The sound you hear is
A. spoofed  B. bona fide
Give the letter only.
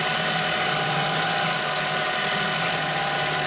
B